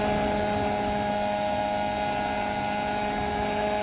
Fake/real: real